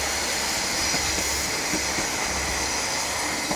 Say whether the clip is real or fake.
real